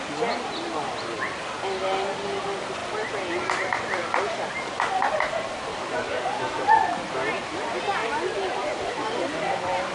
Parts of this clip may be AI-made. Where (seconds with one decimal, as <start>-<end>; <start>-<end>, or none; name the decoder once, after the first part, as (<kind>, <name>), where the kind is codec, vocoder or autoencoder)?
5.7-6.4 (codec, DAC)